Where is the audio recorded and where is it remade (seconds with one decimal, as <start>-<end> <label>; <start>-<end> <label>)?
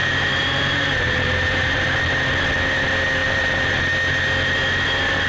0.0-1.8 remade; 1.8-3.2 recorded; 3.2-3.8 remade; 3.8-5.3 recorded